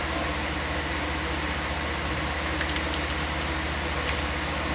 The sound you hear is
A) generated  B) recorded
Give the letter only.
B